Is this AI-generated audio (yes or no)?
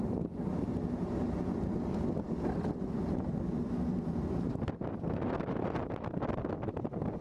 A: no